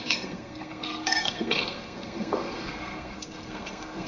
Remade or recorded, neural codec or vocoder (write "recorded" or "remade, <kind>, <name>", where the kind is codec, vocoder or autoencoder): remade, codec, SNAC